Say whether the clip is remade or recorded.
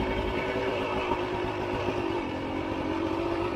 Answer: remade